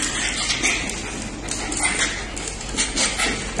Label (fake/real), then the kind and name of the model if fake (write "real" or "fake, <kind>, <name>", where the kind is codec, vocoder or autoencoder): real